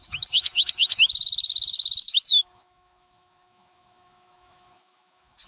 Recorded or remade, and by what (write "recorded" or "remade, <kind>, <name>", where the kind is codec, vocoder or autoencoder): remade, autoencoder, DAC-VAE